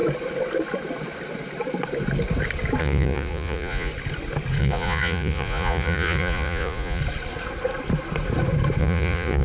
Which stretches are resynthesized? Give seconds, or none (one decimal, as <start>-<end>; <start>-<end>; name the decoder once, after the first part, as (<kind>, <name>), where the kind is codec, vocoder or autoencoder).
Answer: 2.8-3.9 (vocoder, Vocos); 4.6-7.0; 8.8-9.4